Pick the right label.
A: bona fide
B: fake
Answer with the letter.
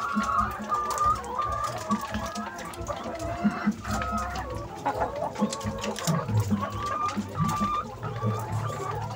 A